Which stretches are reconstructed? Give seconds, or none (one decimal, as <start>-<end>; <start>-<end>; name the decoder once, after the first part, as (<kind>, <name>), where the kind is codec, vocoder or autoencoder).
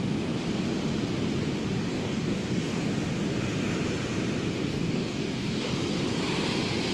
1.9-2.9 (codec, DAC); 4.7-5.7